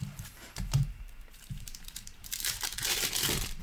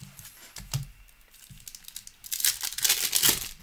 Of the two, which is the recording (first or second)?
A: second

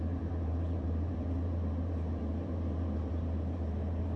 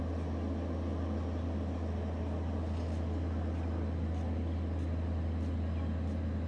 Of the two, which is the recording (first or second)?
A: second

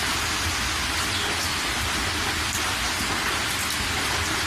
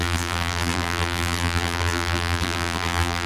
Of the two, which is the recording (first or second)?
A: first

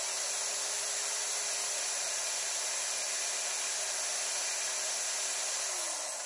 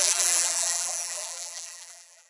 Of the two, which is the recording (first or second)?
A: first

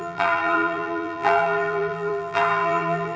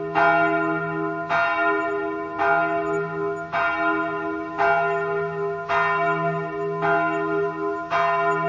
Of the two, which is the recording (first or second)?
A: second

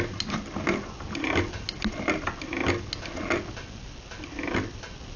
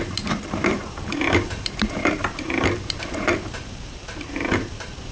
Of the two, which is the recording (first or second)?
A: first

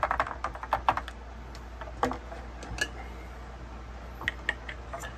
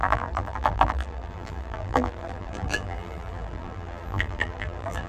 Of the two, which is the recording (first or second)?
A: first